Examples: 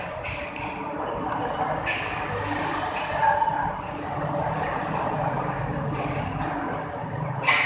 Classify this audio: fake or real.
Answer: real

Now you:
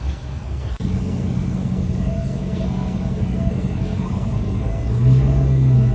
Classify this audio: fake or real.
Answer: fake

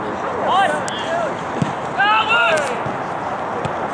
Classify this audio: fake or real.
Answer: real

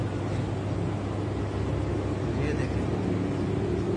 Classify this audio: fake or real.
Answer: real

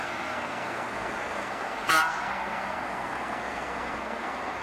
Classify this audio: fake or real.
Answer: fake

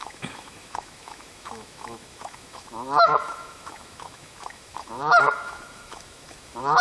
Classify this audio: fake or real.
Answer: fake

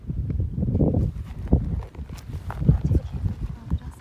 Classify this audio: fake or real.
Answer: real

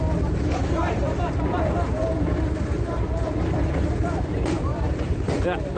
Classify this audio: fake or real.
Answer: fake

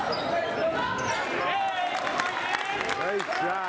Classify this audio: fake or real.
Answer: real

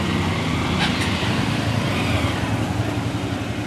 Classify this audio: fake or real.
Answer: real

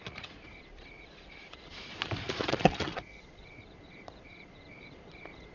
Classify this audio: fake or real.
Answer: fake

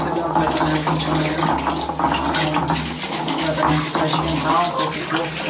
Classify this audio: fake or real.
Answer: real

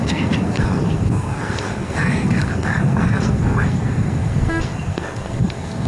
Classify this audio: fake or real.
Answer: fake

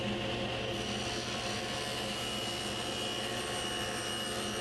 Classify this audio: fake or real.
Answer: real